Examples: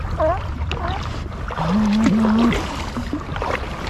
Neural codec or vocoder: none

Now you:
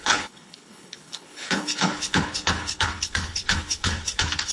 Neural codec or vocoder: codec, HILCodec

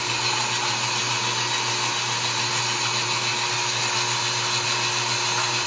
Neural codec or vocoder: none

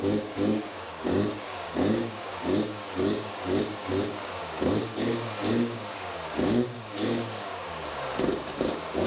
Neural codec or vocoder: codec, DAC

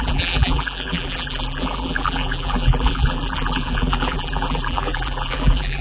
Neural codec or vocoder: vocoder, BigVGAN v2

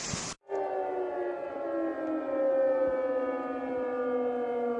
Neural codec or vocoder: none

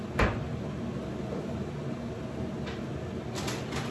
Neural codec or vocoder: none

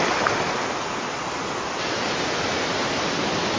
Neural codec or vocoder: none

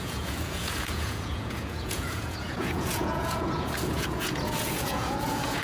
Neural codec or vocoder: vocoder, Vocos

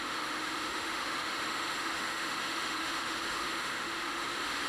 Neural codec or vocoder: autoencoder, DAC-VAE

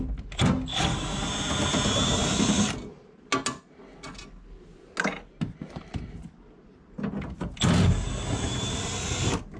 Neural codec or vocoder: none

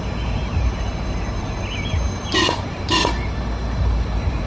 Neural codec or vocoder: none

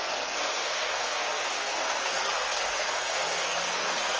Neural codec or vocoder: codec, SNAC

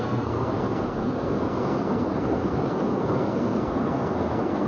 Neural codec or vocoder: codec, SNAC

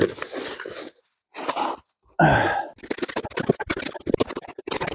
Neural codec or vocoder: none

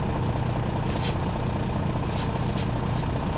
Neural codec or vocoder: none